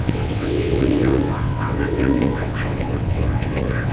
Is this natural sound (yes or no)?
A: no